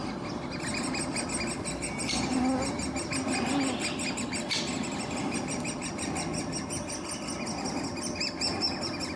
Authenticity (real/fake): real